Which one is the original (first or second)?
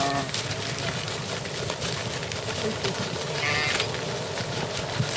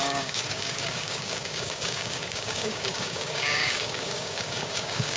first